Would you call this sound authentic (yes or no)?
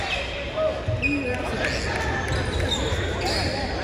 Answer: yes